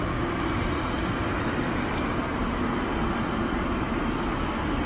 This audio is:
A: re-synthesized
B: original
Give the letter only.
B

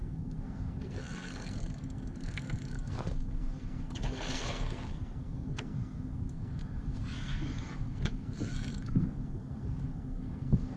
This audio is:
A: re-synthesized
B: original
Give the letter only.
A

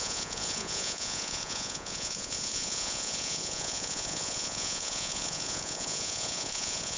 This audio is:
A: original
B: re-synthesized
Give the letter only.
B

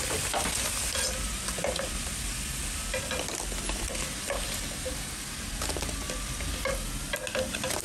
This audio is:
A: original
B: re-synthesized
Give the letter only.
A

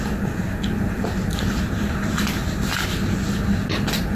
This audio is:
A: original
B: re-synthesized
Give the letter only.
A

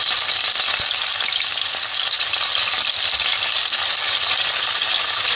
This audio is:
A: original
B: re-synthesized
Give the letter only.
A